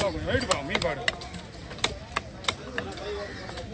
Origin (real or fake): real